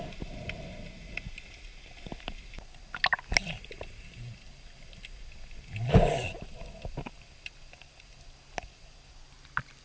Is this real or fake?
real